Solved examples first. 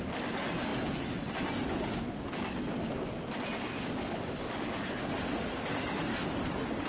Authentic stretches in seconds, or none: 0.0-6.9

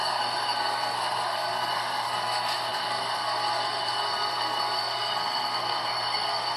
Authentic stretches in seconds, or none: none

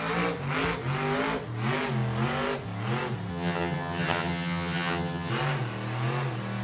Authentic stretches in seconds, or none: 0.0-3.3; 5.3-6.6

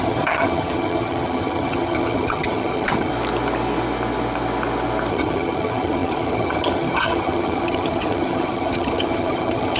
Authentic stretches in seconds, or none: 3.1-5.1